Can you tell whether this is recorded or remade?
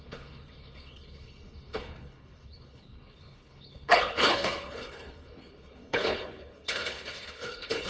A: remade